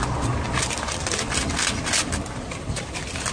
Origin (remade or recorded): recorded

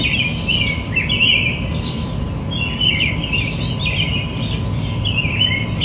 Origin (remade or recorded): recorded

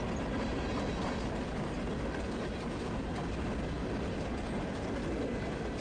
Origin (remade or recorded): recorded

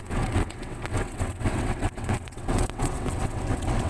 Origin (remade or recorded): remade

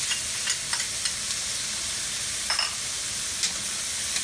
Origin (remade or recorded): recorded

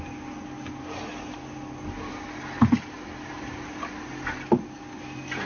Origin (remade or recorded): recorded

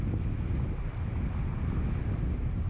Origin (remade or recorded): recorded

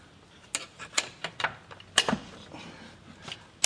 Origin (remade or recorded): recorded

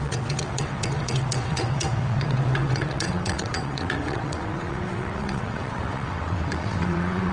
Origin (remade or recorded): remade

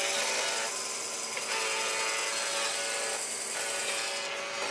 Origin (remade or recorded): recorded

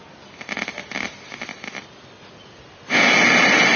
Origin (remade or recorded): recorded